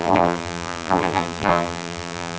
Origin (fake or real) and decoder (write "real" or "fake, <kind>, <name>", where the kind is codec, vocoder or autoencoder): fake, vocoder, BigVGAN v2